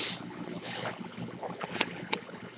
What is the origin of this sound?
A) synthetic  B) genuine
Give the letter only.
A